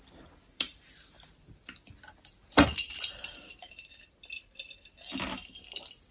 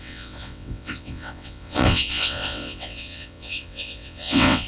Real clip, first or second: first